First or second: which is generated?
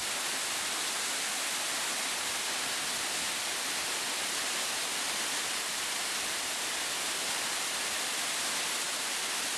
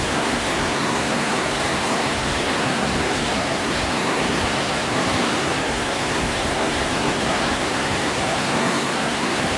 second